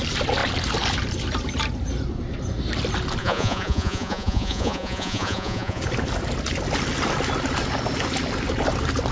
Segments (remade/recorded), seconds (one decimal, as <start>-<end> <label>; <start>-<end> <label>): 0.0-3.2 recorded; 3.2-5.8 remade; 5.8-9.1 recorded